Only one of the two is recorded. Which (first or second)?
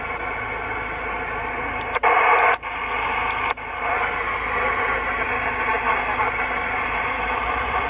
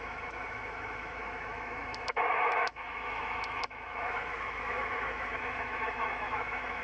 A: first